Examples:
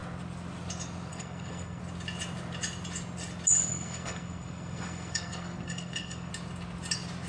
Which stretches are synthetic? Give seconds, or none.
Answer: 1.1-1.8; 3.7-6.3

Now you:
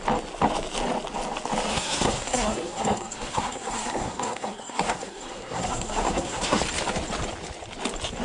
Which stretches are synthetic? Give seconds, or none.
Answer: 1.7-6.6

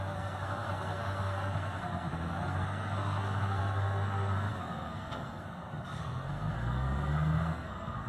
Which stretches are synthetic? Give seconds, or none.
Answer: 0.0-8.1

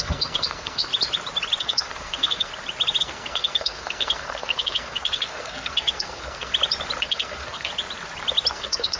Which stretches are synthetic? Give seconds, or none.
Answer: 0.0-0.9; 1.6-2.5; 3.0-6.5; 7.0-7.7; 8.5-9.0

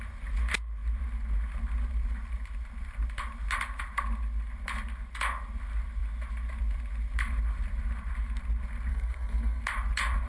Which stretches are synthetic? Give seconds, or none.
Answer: 8.9-9.6

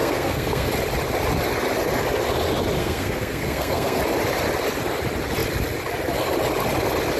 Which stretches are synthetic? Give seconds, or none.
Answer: 0.0-0.7; 2.8-4.0

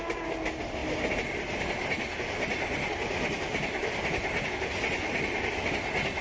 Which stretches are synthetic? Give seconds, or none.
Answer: none